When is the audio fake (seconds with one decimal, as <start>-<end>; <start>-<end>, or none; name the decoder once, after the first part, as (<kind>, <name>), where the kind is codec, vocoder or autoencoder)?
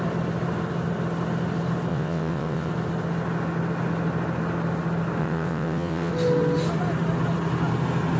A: 1.9-2.7 (vocoder, WaveNeXt); 5.2-6.1